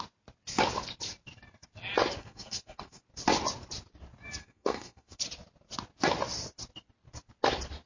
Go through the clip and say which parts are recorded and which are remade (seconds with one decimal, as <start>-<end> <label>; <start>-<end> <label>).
0.0-2.2 recorded; 2.2-3.0 remade; 3.0-4.4 recorded; 4.4-5.2 remade; 5.2-7.9 recorded